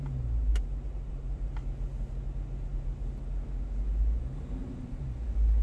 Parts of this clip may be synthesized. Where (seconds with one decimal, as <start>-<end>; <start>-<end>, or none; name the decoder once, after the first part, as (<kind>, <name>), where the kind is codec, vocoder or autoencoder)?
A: 0.5-1.1 (vocoder, BigVGAN v2)